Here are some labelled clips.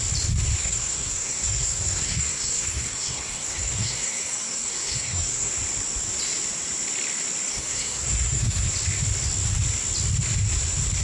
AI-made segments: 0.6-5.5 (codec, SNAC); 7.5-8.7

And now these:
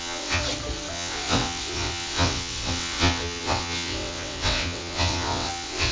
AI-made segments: 0.0-0.4 (vocoder, WaveNeXt); 0.9-5.9

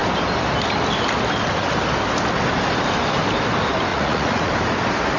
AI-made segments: 3.9-4.5 (vocoder, Vocos)

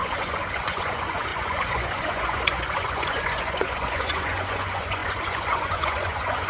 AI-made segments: 0.0-6.5 (vocoder, Vocos)

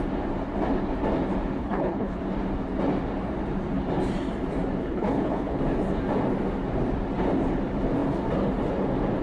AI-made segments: 1.6-2.2 (codec, HILCodec); 4.8-5.6

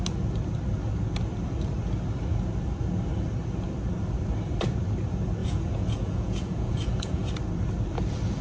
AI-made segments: 5.4-7.3 (vocoder, Vocos)

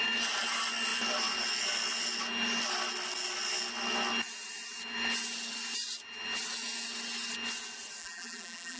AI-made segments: 8.0-8.8 (vocoder, BigVGAN v2)

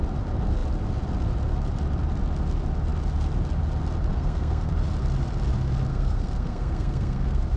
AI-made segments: 4.1-4.7 (codec, SNAC); 5.9-7.6